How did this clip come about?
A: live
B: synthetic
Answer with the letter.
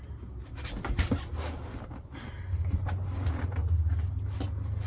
A